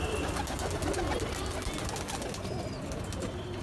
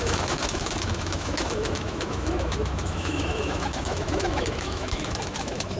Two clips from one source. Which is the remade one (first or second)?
second